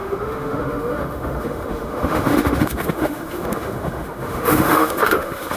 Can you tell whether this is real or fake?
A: fake